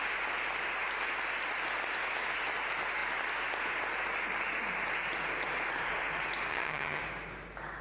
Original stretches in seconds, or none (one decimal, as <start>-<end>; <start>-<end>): 0.0-6.5; 7.0-7.8